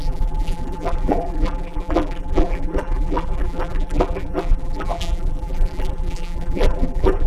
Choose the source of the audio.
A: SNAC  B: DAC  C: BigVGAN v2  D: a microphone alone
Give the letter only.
C